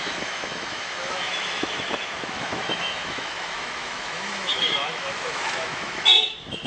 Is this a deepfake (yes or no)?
yes